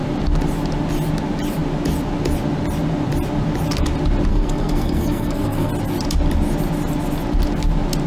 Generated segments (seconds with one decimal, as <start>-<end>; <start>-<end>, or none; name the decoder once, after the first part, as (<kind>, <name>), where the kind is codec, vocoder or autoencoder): 4.3-5.7 (codec, SNAC)